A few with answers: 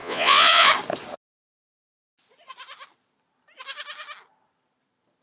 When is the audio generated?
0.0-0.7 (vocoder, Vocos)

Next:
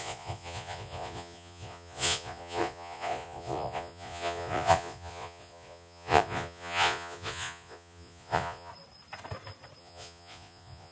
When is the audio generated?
0.0-8.7 (vocoder, Vocos); 9.8-10.9

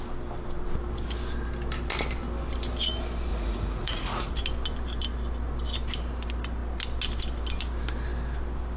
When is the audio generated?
3.3-4.3 (vocoder, Vocos)

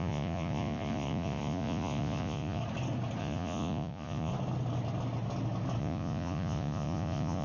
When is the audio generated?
0.0-2.6 (vocoder, Vocos); 3.2-4.3; 5.8-7.4

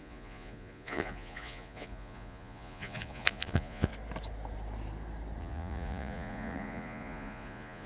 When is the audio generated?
0.0-3.9 (vocoder, Vocos); 5.4-7.9

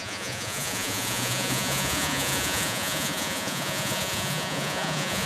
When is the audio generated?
0.0-5.3 (vocoder, Vocos)